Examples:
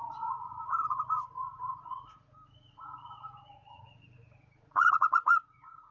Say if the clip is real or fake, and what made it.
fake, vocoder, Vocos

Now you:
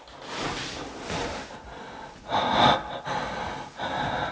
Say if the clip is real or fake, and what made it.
real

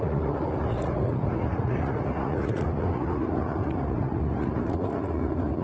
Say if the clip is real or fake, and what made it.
fake, vocoder, Vocos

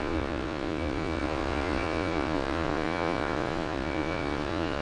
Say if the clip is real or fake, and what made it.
fake, vocoder, Vocos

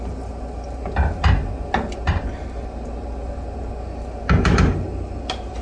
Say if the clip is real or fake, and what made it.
real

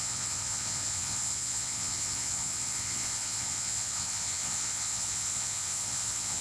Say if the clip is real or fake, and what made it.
fake, vocoder, Vocos